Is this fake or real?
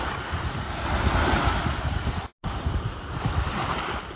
real